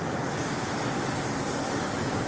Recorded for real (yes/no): yes